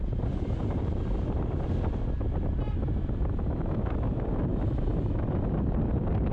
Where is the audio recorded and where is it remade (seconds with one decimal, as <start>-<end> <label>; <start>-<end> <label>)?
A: 0.0-6.3 recorded